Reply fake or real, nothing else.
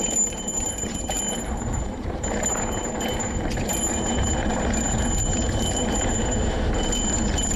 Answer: fake